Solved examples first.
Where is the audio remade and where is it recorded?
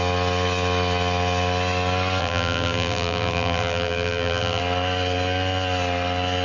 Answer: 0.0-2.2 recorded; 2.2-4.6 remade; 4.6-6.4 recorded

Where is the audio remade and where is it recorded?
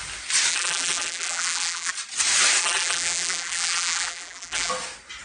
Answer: 0.0-0.5 recorded; 0.5-1.9 remade; 1.9-2.6 recorded; 2.6-4.7 remade; 4.7-5.2 recorded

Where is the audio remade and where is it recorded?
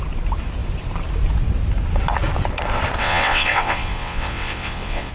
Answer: 0.0-3.0 recorded; 3.0-5.1 remade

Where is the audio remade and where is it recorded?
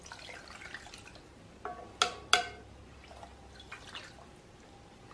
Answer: 0.0-5.1 recorded